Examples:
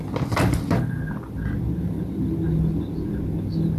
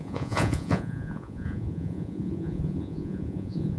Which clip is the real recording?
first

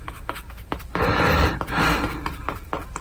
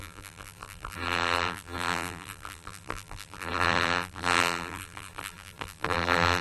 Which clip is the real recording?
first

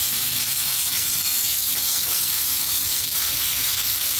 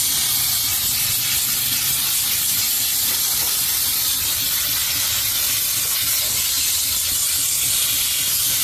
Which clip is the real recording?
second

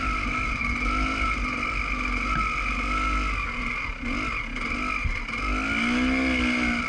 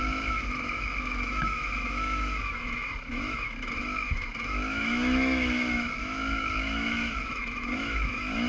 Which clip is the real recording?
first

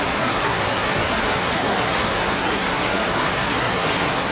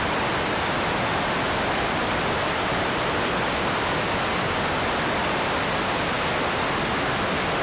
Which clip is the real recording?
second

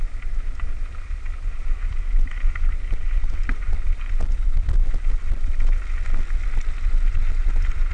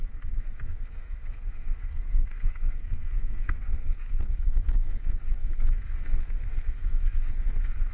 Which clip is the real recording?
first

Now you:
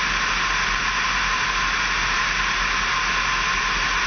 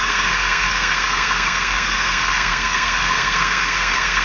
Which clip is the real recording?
first